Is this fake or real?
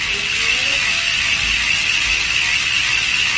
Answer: real